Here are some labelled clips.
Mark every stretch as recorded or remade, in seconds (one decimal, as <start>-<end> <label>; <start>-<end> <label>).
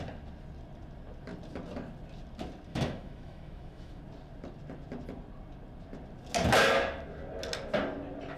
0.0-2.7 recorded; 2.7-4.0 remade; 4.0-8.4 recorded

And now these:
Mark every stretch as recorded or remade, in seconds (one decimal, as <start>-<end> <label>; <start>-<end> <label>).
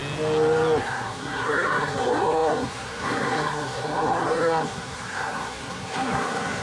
0.0-0.8 recorded; 0.8-6.6 remade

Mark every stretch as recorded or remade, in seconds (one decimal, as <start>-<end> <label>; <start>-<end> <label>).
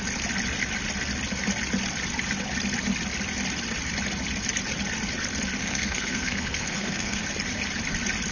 0.0-5.6 recorded; 5.6-7.2 remade; 7.2-8.3 recorded